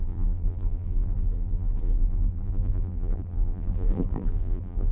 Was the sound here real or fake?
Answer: fake